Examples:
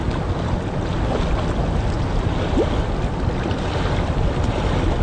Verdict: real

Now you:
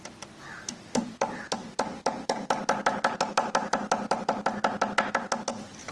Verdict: real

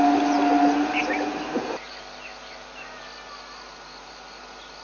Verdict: real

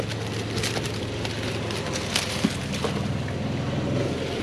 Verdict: real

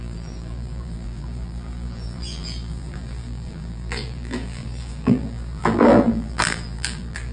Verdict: fake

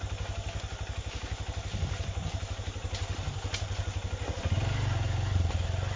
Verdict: real